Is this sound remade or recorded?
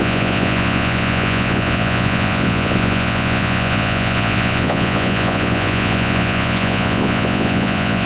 remade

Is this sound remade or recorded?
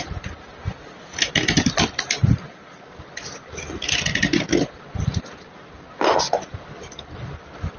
recorded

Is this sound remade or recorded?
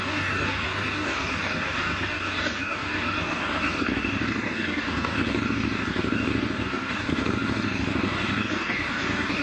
remade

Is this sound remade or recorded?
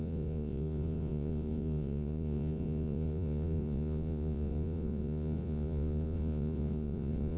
remade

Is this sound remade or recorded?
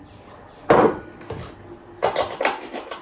recorded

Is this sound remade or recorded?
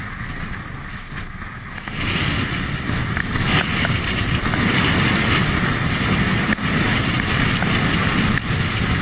recorded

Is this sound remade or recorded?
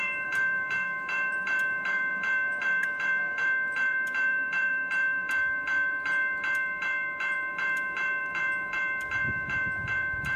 remade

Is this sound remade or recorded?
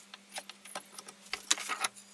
recorded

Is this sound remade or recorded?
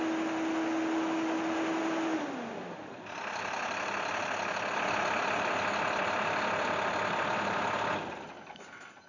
recorded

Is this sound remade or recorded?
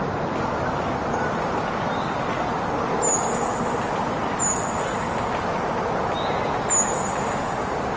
recorded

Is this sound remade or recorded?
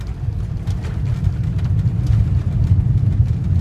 recorded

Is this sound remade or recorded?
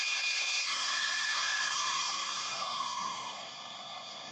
remade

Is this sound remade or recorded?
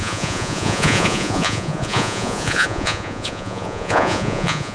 remade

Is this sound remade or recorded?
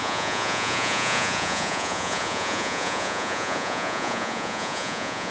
remade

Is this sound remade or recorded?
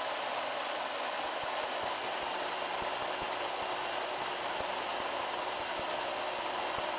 recorded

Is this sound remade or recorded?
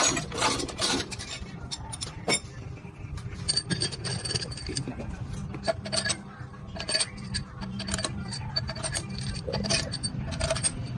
remade